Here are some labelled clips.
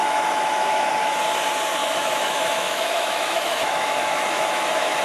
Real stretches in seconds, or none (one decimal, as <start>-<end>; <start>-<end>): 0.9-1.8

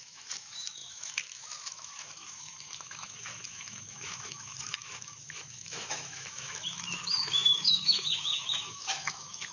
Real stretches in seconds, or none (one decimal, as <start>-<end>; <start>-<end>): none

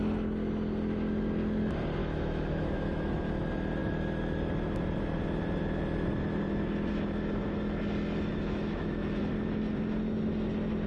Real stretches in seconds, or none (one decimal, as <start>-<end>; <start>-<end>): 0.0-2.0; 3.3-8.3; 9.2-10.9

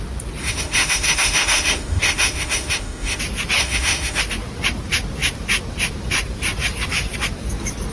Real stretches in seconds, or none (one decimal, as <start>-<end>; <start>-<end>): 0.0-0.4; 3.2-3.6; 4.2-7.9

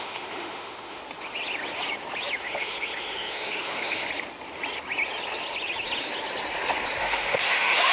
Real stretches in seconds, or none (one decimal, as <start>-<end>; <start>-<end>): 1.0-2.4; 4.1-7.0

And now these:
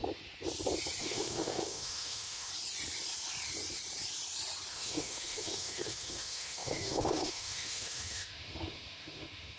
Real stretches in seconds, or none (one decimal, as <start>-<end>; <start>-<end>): 0.0-1.0; 2.5-4.7